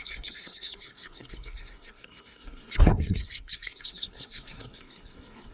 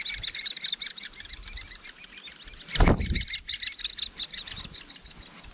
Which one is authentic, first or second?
second